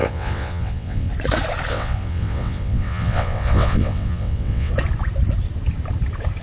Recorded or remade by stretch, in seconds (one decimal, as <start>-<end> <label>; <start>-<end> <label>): 0.0-1.1 remade; 1.1-1.7 recorded; 1.7-4.7 remade; 4.7-6.4 recorded